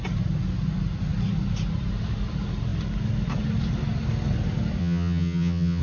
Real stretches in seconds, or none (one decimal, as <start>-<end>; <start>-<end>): 0.0-4.8